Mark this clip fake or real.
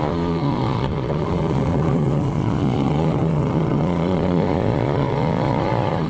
fake